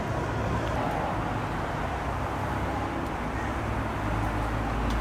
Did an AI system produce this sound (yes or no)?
no